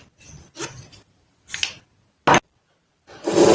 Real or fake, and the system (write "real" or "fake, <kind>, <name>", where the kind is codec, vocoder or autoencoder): real